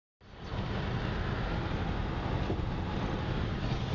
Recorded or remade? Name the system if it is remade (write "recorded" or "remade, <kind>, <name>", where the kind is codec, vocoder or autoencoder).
recorded